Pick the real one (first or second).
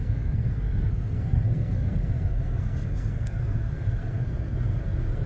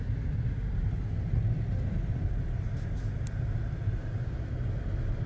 second